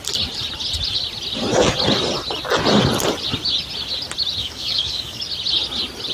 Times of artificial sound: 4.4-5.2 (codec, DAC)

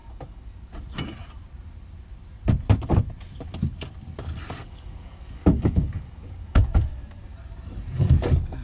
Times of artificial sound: 0.0-0.7 (codec, DAC); 4.6-7.2

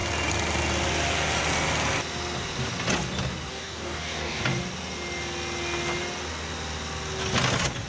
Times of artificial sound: 3.5-4.4 (codec, DAC)

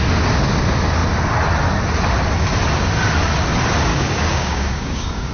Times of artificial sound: 3.9-5.3 (codec, DAC)